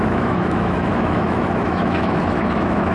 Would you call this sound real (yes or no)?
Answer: no